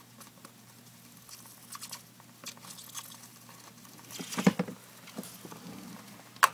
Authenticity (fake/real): real